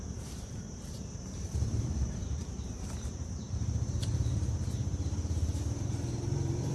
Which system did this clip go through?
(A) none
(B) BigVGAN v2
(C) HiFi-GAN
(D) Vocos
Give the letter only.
B